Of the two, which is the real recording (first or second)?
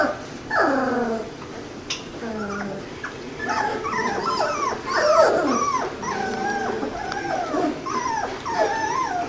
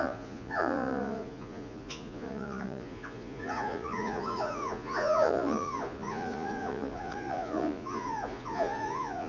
first